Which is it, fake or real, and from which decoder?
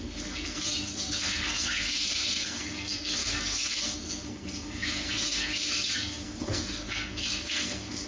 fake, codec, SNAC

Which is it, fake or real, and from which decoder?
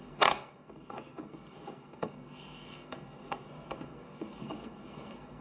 fake, codec, SNAC